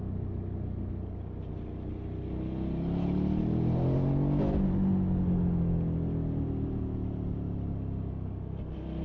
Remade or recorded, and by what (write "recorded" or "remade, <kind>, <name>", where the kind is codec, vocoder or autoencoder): recorded